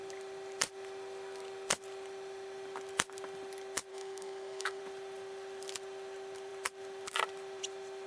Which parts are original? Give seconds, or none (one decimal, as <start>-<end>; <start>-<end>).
0.0-3.9; 4.8-8.1